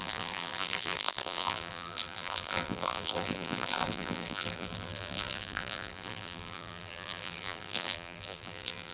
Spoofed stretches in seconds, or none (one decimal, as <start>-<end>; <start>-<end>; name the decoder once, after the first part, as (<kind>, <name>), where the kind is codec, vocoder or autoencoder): 0.0-8.9 (vocoder, BigVGAN v2)